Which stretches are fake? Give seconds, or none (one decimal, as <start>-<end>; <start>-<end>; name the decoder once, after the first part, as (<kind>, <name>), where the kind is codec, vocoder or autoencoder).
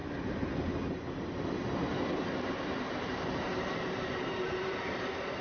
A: 2.5-5.4 (vocoder, BigVGAN v2)